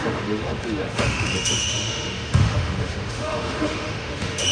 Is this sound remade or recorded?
remade